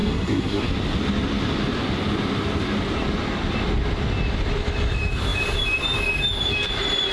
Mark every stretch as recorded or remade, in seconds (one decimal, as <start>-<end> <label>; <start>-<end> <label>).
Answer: 0.0-0.7 remade; 0.7-7.1 recorded

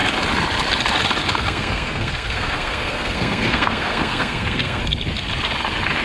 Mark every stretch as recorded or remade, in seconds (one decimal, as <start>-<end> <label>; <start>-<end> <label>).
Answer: 0.0-1.2 recorded; 1.2-4.8 remade; 4.8-6.0 recorded

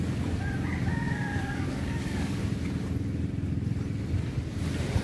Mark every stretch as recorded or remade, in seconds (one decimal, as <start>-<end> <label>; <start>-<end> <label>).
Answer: 0.0-0.9 recorded; 0.9-2.4 remade; 2.4-5.0 recorded

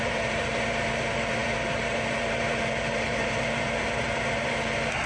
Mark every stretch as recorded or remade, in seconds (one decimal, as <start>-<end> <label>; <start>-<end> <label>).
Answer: 0.0-5.1 remade

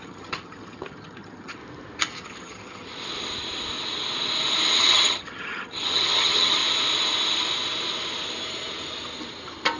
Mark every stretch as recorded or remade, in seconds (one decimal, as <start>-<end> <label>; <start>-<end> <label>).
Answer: 0.0-1.6 remade; 1.6-2.2 recorded; 2.2-2.9 remade; 2.9-4.8 recorded; 4.8-6.6 remade; 6.6-9.8 recorded

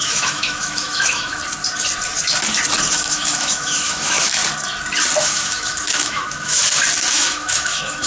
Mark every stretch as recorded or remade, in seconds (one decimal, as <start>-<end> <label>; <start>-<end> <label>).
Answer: 0.0-1.4 remade; 1.4-2.9 recorded; 2.9-4.4 remade; 4.4-5.2 recorded; 5.2-6.6 remade; 6.6-7.1 recorded; 7.1-8.1 remade